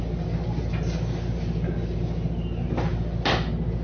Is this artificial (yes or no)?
no